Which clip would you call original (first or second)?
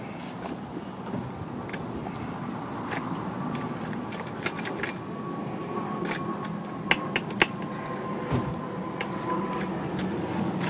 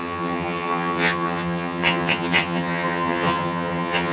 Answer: first